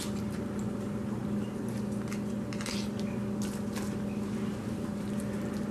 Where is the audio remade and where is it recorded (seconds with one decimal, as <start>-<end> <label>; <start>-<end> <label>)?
0.0-5.7 recorded